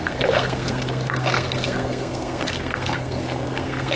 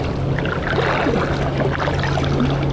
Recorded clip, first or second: second